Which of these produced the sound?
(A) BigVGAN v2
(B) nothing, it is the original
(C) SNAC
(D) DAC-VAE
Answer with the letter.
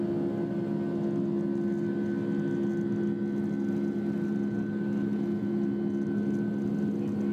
B